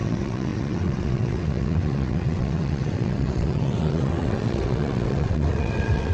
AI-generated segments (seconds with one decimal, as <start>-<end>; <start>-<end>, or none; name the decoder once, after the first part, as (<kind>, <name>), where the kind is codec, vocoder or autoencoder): 0.0-6.1 (vocoder, WaveNeXt)